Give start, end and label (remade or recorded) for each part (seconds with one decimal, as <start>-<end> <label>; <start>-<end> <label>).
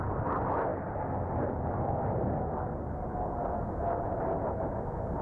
0.0-5.2 recorded